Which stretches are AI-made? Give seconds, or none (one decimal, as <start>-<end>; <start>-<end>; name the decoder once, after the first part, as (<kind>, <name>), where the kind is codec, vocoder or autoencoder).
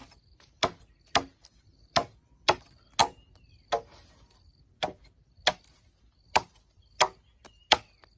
none